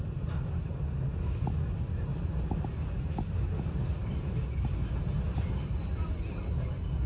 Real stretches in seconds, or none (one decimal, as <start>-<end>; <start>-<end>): 0.0-7.1